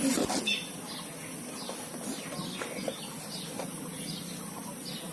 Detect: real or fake real